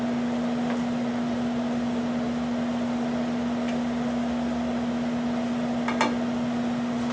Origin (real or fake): real